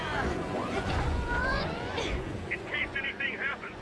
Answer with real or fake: fake